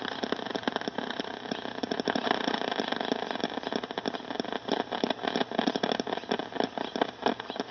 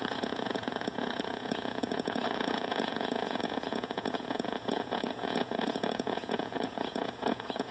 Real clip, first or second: first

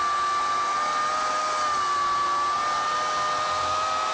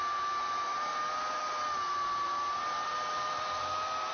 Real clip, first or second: first